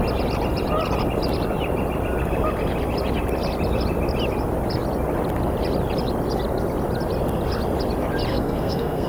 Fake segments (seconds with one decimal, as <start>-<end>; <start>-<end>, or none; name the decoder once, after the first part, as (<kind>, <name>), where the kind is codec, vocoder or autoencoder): 8.3-9.1 (codec, SNAC)